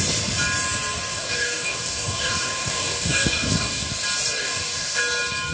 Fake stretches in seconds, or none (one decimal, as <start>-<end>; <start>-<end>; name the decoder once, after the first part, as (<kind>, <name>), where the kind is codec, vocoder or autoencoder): 1.1-3.9 (codec, DAC); 4.4-5.0